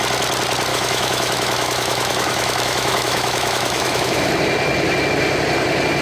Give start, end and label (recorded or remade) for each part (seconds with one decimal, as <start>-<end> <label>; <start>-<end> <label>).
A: 0.0-0.7 recorded; 0.7-4.3 remade; 4.3-6.0 recorded